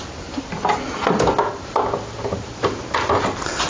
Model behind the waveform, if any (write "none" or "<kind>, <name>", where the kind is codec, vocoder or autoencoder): none